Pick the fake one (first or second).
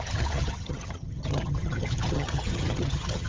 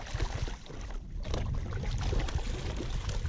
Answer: first